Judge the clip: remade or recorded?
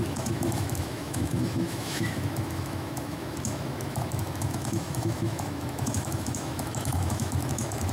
remade